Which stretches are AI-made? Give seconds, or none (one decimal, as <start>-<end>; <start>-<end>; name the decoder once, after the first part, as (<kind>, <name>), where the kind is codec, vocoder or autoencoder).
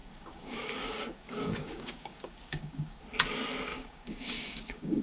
0.0-3.0 (codec, DAC); 3.7-5.0